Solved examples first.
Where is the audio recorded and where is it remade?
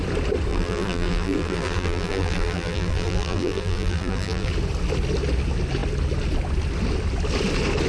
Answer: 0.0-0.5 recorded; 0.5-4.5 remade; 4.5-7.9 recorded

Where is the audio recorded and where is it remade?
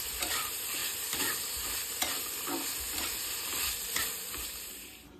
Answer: 0.0-5.2 remade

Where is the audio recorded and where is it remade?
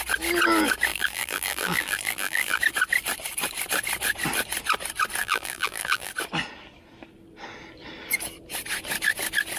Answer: 0.0-0.9 recorded; 0.9-2.6 remade; 2.6-5.2 recorded; 5.2-6.1 remade; 6.1-9.6 recorded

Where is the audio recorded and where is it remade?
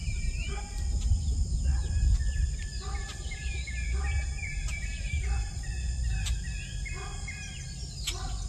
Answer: 0.0-0.6 remade; 0.6-3.1 recorded; 3.1-5.5 remade; 5.5-8.5 recorded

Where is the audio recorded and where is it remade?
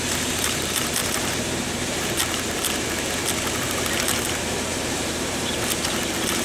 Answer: 0.0-2.2 remade; 2.2-3.6 recorded; 3.6-6.4 remade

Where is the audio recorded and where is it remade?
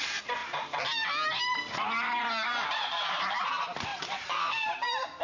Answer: 0.0-0.4 recorded; 0.4-3.5 remade; 3.5-3.9 recorded; 3.9-5.2 remade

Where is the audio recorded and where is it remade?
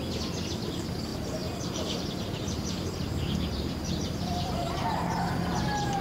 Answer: 0.0-1.1 recorded; 1.1-4.7 remade; 4.7-6.0 recorded